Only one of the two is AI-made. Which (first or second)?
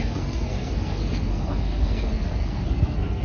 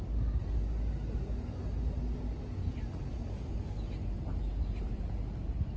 first